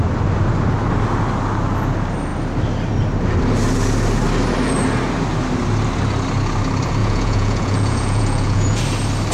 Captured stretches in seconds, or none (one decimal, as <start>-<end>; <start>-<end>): 0.0-7.0; 8.8-9.3